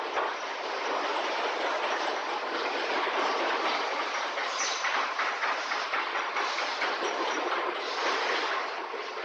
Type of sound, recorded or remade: recorded